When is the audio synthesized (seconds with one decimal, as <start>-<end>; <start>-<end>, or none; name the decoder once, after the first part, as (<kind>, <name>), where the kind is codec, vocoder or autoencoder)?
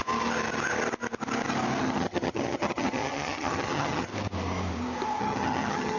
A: 1.8-4.1 (vocoder, HiFi-GAN); 5.2-6.0